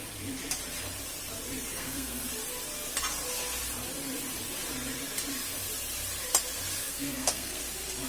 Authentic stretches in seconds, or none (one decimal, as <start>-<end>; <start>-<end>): 0.0-1.7; 2.3-6.8; 7.6-8.1